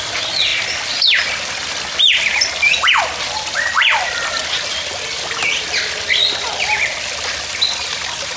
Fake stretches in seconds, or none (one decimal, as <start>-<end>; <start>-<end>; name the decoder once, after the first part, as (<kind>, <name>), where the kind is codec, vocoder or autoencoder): none

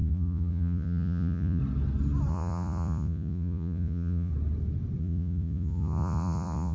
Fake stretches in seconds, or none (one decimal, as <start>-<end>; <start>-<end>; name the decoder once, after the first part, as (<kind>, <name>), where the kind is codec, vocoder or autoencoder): 0.0-1.6 (vocoder, Vocos); 2.3-4.3; 5.0-6.7

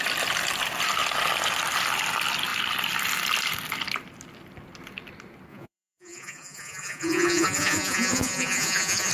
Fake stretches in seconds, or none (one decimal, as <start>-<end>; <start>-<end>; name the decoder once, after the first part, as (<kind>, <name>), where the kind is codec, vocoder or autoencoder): 5.5-9.1 (vocoder, Vocos)